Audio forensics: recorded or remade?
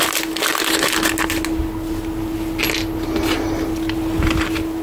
recorded